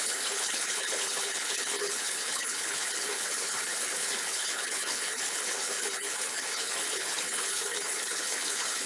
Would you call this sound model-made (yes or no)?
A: yes